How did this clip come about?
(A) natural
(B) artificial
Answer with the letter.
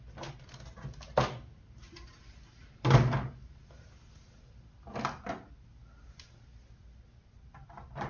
A